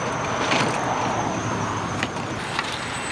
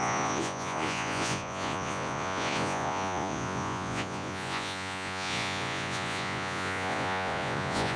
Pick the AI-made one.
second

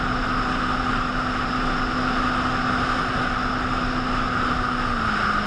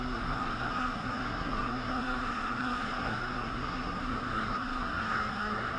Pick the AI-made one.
second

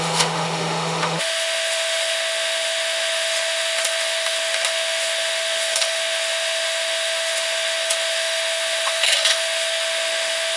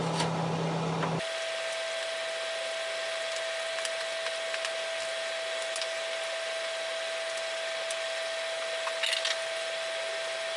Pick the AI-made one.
first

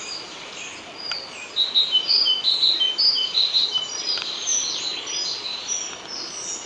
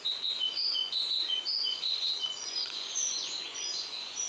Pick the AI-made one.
second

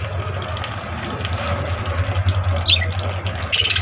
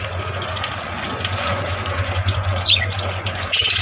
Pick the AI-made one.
second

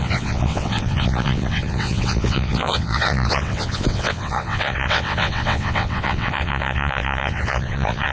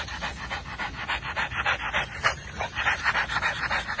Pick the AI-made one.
first